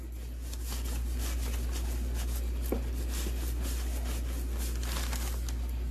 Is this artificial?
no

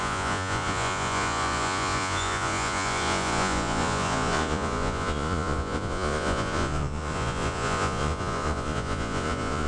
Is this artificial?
yes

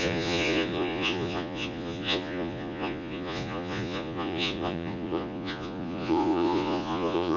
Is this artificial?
yes